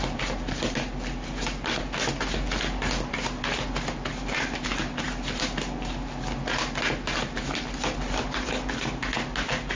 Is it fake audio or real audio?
real